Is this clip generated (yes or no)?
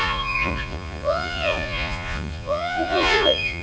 yes